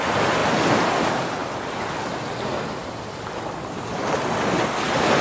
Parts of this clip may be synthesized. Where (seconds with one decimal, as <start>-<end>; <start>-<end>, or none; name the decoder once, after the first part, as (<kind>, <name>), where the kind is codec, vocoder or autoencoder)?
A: 2.8-3.9 (vocoder, BigVGAN v2)